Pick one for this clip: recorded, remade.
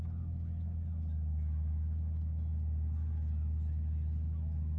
recorded